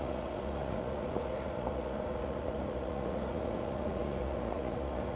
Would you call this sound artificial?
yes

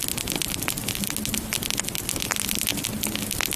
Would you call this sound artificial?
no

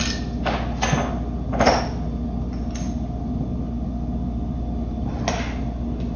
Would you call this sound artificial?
no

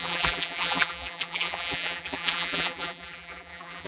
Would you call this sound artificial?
yes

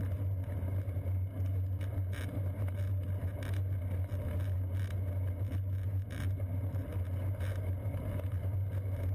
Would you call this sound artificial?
no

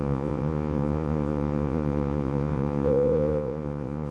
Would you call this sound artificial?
yes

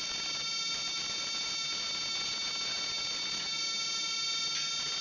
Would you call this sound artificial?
no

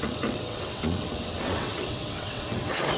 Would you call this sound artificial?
yes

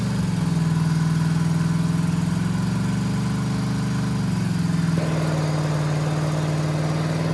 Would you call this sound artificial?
no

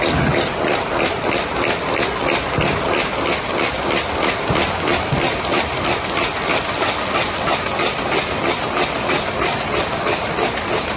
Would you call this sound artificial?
yes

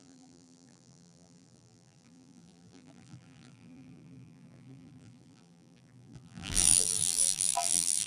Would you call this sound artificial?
yes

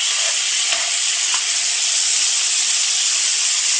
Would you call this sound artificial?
yes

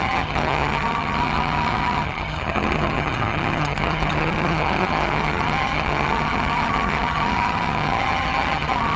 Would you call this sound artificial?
yes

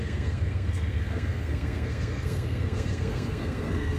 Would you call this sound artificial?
yes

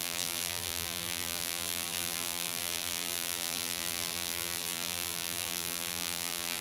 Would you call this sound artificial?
yes